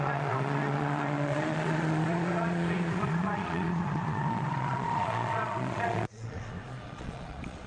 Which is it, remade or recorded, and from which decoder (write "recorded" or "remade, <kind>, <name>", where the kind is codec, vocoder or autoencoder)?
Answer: remade, vocoder, Vocos